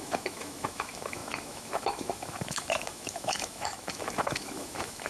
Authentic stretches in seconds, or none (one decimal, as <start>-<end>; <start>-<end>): none